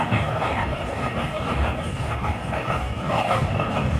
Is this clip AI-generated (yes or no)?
yes